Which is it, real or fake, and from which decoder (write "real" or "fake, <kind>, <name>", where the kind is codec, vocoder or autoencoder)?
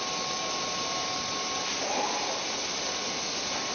real